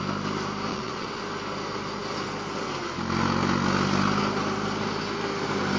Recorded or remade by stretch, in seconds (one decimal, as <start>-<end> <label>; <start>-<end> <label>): 0.0-0.7 recorded; 0.7-1.2 remade; 1.2-5.8 recorded